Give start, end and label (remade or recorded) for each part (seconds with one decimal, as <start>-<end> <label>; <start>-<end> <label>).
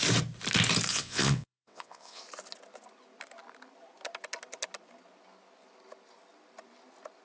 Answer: 0.0-0.9 recorded; 0.9-2.2 remade; 2.2-7.2 recorded